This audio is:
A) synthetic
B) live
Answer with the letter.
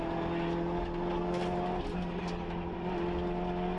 B